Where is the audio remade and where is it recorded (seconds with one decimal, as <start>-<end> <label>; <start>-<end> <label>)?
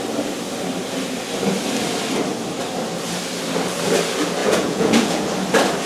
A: 0.0-4.4 recorded; 4.4-5.2 remade; 5.2-5.9 recorded